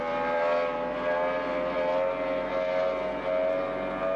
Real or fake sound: real